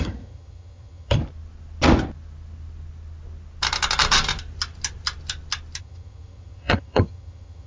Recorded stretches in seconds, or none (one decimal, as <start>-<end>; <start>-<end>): 1.2-5.8